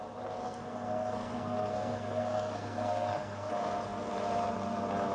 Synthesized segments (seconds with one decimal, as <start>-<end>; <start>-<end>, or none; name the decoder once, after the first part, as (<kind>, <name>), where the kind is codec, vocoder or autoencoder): 0.4-3.5 (codec, SNAC)

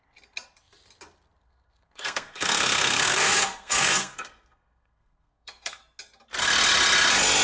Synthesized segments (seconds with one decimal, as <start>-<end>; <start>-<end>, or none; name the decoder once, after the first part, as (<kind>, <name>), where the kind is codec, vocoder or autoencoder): 1.4-5.8 (codec, SNAC)

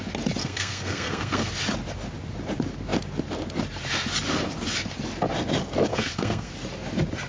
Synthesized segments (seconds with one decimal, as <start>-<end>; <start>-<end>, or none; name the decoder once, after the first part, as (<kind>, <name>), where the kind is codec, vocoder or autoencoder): 0.4-1.5 (codec, SNAC); 5.9-6.5